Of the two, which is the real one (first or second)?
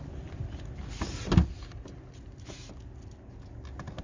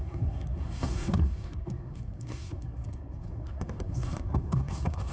first